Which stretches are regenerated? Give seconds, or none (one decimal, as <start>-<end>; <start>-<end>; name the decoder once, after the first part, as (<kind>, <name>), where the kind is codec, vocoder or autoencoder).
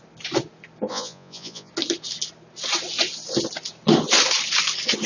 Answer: 0.9-1.7 (vocoder, Vocos)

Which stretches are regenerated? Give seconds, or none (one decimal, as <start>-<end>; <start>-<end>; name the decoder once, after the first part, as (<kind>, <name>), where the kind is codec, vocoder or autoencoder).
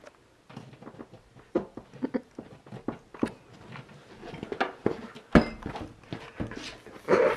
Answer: none